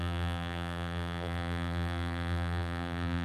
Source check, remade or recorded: remade